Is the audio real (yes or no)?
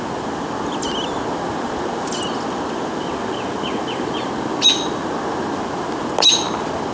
yes